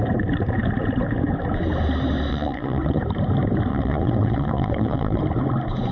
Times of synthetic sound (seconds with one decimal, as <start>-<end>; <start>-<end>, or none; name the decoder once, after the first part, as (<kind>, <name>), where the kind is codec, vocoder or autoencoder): 2.3-3.0 (vocoder, WaveNeXt); 3.7-5.2